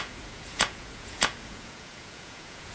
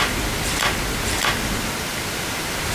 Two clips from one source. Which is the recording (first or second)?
second